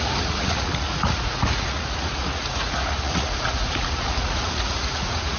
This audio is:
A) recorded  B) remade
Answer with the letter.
B